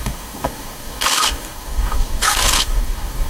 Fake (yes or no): yes